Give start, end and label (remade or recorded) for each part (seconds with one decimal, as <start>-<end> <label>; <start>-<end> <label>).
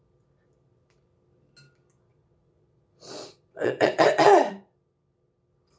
0.0-2.1 recorded; 2.1-4.5 remade; 4.5-5.8 recorded